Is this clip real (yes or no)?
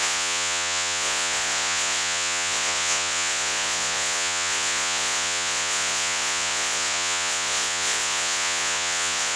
no